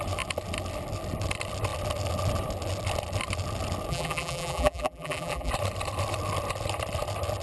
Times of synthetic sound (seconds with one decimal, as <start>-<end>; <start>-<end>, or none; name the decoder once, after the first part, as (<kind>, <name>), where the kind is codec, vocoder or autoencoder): 3.9-5.5 (vocoder, BigVGAN v2)